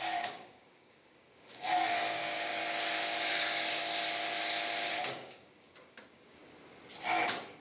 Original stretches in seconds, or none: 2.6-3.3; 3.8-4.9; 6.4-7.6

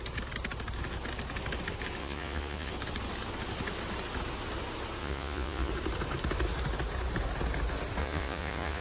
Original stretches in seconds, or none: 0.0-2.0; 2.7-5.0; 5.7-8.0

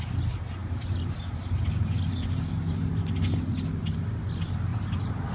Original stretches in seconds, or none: 0.0-4.7

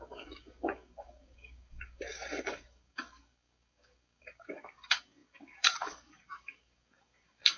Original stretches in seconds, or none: none

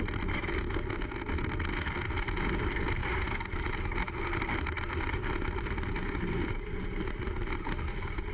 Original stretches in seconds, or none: 0.0-8.3

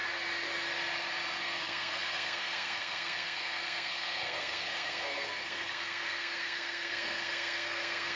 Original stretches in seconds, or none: 0.0-1.4